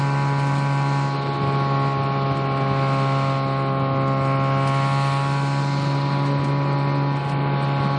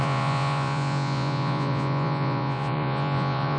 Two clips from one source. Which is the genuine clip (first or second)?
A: first